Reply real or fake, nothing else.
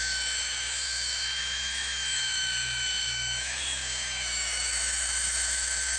fake